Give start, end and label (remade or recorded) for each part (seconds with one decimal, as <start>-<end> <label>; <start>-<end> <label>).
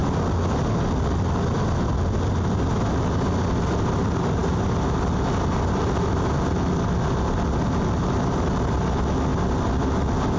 0.0-10.4 recorded